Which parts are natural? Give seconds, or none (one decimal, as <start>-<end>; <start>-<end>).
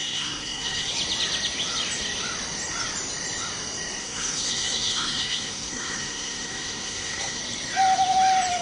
0.9-4.0; 7.4-8.6